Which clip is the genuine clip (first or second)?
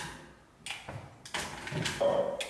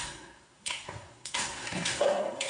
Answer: first